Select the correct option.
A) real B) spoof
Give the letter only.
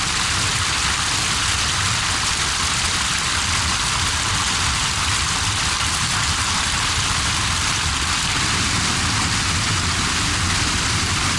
A